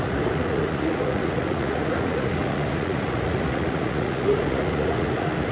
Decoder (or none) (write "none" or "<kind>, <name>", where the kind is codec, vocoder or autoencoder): vocoder, Vocos